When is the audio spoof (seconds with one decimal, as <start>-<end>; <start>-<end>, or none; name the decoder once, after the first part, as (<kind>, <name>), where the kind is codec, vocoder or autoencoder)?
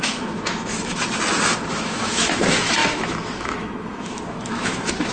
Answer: 0.0-1.0 (autoencoder, DAC-VAE); 1.7-5.1